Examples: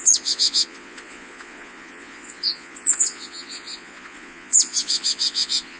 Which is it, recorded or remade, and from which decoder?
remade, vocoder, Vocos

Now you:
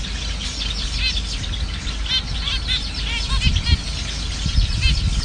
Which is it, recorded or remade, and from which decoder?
recorded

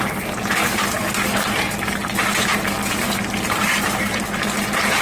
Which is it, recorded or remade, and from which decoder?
recorded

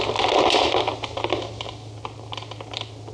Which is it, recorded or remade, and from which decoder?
recorded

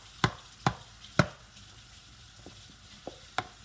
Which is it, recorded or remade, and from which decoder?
recorded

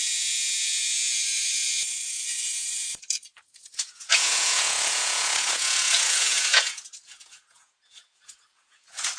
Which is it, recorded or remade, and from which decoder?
remade, vocoder, Vocos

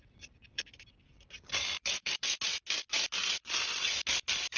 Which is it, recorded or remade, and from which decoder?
recorded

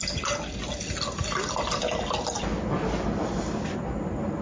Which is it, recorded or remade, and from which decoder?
recorded